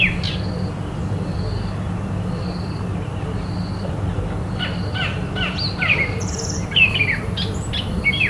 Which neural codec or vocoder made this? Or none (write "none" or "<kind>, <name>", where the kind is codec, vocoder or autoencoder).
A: none